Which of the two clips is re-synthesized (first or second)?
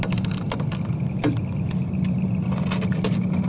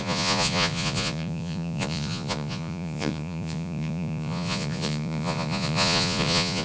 second